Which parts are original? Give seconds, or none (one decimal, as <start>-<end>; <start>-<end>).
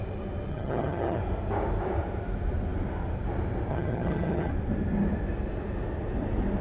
0.0-0.5; 1.2-3.7; 4.5-6.6